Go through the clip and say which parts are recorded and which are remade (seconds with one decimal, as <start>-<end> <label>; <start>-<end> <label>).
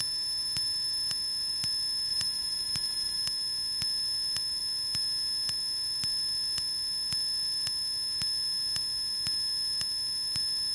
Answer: 0.0-2.1 recorded; 2.1-3.2 remade; 3.2-10.7 recorded